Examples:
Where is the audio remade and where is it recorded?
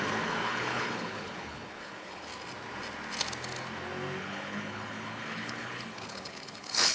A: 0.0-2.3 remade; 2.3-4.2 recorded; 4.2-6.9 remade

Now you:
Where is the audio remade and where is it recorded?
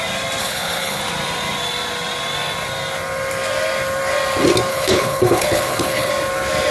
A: 0.0-0.4 recorded; 0.4-1.0 remade; 1.0-4.7 recorded; 4.7-6.1 remade; 6.1-6.7 recorded